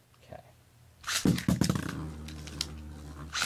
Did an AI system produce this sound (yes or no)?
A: no